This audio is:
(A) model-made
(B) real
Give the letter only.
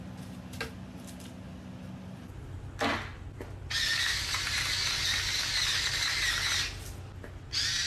B